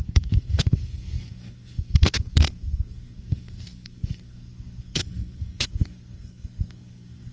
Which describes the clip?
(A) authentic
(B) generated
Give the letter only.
B